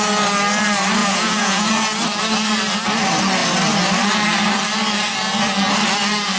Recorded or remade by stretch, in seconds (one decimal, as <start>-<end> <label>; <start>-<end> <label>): 0.0-1.0 recorded; 1.0-1.7 remade; 1.7-6.4 recorded